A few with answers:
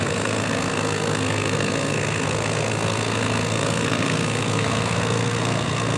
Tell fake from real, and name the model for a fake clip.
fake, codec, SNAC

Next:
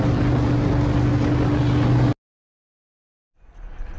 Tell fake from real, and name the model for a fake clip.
real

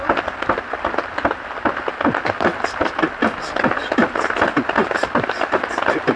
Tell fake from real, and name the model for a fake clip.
real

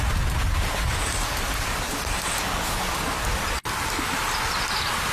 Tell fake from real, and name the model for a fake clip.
real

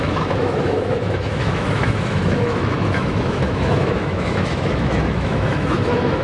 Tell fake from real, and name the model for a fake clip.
fake, autoencoder, DAC-VAE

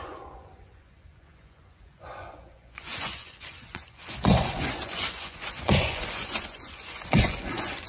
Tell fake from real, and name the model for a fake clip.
fake, vocoder, Vocos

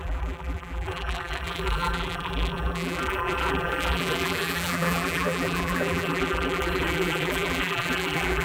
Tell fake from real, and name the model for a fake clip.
fake, vocoder, BigVGAN v2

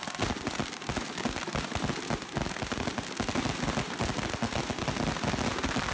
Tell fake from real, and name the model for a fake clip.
real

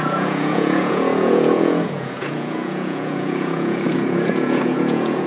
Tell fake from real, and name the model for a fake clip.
fake, vocoder, Vocos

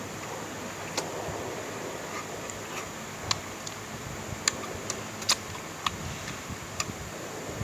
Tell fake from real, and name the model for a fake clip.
real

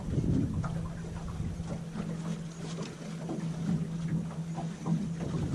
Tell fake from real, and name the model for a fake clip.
real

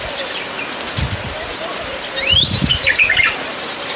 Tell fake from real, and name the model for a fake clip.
real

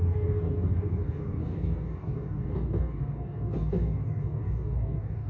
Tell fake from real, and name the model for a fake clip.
fake, codec, DAC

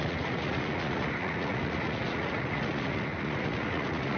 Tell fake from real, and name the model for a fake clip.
fake, vocoder, Vocos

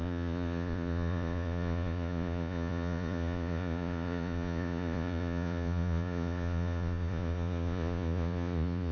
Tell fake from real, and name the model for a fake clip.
fake, vocoder, Vocos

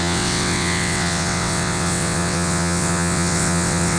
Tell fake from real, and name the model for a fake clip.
fake, vocoder, WaveNeXt